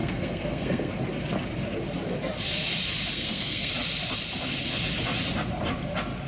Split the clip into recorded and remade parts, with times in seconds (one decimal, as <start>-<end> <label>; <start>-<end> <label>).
0.0-0.9 remade; 0.9-3.1 recorded; 3.1-3.7 remade; 3.7-6.3 recorded